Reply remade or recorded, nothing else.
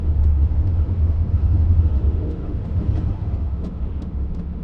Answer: remade